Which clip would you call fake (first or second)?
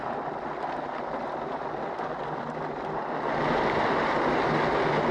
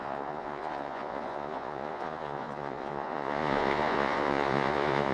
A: second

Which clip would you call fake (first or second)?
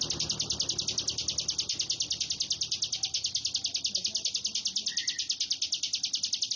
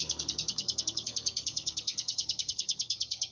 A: second